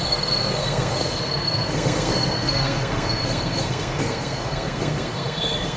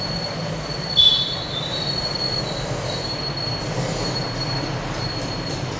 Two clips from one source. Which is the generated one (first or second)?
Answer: first